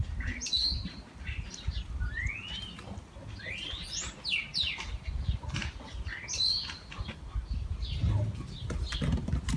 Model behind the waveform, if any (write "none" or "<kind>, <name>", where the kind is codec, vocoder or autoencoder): none